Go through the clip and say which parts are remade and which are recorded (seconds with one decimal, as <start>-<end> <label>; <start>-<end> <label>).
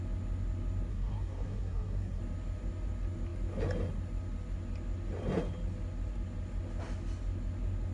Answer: 0.0-0.9 recorded; 0.9-2.2 remade; 2.2-7.9 recorded